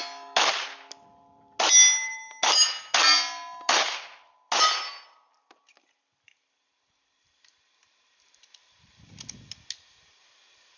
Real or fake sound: real